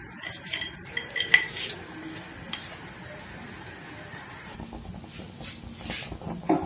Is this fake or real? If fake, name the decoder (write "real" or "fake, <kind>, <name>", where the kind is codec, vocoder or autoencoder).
real